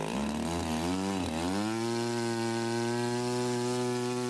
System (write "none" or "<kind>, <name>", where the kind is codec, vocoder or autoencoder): none